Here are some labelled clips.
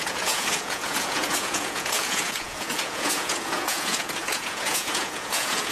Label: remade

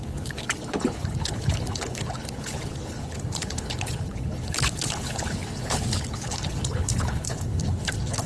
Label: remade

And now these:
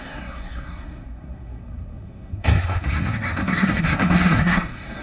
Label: remade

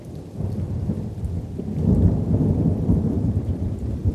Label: remade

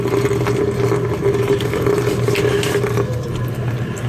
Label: recorded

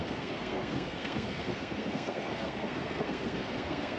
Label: remade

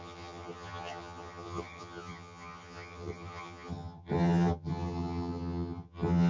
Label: remade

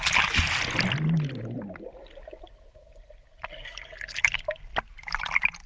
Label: recorded